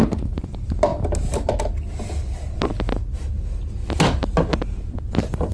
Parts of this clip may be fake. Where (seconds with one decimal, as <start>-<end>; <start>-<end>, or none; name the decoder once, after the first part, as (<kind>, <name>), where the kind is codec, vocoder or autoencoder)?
none